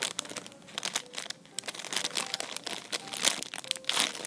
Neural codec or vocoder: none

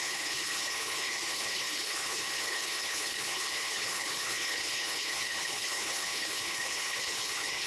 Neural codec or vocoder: codec, HILCodec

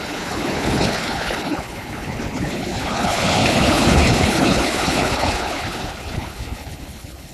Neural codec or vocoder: codec, HILCodec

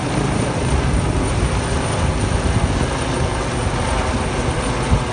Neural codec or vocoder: none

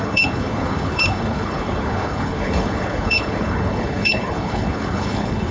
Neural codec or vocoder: codec, HILCodec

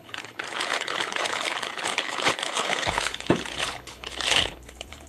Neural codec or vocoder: codec, HILCodec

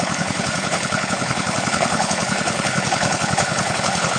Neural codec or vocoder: codec, HILCodec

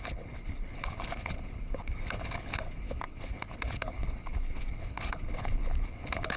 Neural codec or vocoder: codec, HILCodec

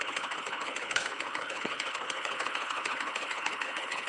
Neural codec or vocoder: codec, HILCodec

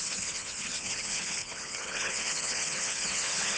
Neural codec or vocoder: codec, HILCodec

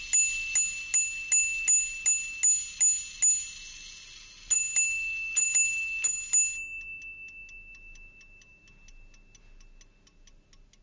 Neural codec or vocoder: none